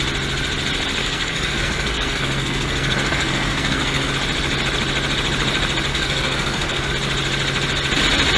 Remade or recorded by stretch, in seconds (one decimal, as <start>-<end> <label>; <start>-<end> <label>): 0.0-1.0 recorded; 1.0-4.1 remade; 4.1-5.9 recorded; 5.9-6.9 remade; 6.9-8.4 recorded